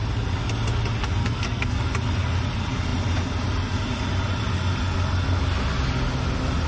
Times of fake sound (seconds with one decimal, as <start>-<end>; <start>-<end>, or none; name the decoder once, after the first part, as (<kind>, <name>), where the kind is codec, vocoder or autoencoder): 1.2-1.8 (codec, SNAC)

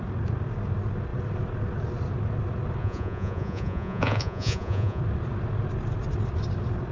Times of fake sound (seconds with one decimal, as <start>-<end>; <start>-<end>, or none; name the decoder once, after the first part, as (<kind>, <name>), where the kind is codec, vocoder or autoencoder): 2.8-5.0 (vocoder, Vocos)

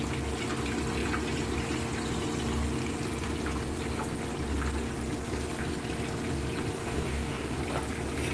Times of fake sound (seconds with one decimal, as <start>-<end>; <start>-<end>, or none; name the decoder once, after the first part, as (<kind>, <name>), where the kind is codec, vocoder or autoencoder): 6.8-7.6 (codec, DAC)

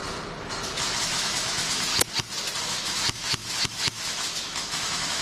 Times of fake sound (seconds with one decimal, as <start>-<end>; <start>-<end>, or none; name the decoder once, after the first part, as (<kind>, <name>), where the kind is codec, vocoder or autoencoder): 1.0-1.9 (autoencoder, DAC-VAE); 2.6-5.2

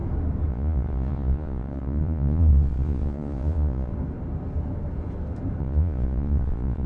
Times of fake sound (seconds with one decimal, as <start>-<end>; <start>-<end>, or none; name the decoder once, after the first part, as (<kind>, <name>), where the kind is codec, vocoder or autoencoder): 0.5-3.9 (vocoder, Vocos); 5.6-6.9

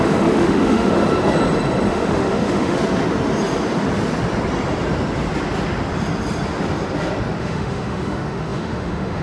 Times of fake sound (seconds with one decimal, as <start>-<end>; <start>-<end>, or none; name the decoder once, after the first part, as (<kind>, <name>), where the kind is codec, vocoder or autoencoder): 0.0-1.0 (autoencoder, DAC-VAE); 1.9-2.8; 7.4-9.2

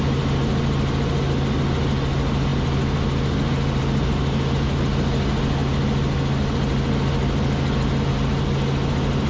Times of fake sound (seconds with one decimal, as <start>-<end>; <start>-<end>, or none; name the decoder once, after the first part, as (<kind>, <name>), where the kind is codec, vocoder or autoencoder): none